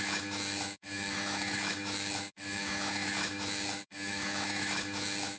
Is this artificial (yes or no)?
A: yes